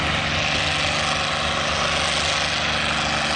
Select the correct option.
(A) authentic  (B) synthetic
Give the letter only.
A